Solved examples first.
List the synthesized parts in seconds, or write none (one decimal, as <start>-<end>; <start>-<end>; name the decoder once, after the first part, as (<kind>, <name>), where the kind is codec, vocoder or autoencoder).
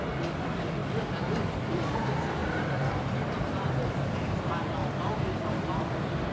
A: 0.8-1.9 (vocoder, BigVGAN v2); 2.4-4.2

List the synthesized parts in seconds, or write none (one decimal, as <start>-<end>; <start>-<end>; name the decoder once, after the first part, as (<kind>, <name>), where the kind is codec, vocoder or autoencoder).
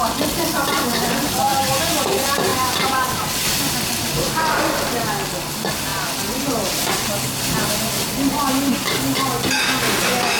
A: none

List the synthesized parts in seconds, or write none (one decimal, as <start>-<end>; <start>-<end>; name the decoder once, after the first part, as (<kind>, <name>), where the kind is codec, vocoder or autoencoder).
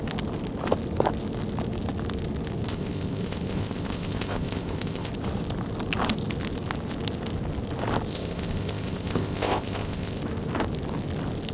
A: 2.7-5.1 (codec, ZipCodec); 8.1-10.2